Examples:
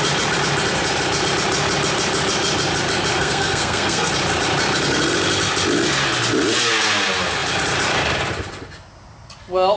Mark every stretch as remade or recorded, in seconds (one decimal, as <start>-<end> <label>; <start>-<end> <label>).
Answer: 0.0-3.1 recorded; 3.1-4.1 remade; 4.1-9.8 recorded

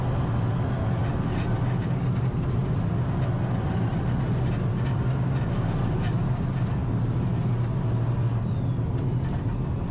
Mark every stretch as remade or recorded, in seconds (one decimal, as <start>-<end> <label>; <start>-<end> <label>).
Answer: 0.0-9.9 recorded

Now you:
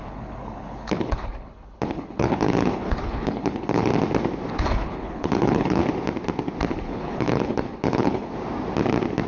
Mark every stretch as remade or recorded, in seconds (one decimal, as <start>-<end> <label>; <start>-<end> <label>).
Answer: 0.0-3.9 remade; 3.9-4.5 recorded; 4.5-5.8 remade; 5.8-6.7 recorded; 6.7-8.3 remade; 8.3-9.3 recorded

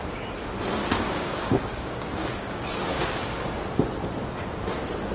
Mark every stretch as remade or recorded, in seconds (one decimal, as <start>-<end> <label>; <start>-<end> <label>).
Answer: 0.0-0.8 recorded; 0.8-3.6 remade; 3.6-5.1 recorded

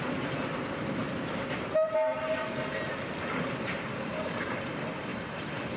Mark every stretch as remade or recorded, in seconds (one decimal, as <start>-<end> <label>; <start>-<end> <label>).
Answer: 0.0-1.0 recorded; 1.0-4.5 remade; 4.5-5.1 recorded; 5.1-5.8 remade

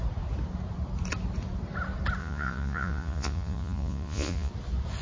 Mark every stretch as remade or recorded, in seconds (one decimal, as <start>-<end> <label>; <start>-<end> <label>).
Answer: 0.0-2.2 recorded; 2.2-4.5 remade; 4.5-5.0 recorded

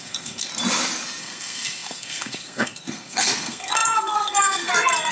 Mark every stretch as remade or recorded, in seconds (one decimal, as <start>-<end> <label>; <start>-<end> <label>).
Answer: 0.0-0.5 remade; 0.5-1.2 recorded; 1.2-5.1 remade

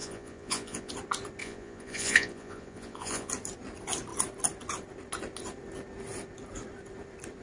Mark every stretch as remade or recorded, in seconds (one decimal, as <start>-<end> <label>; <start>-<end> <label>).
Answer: 0.0-0.9 remade; 0.9-1.4 recorded; 1.4-3.3 remade; 3.3-7.4 recorded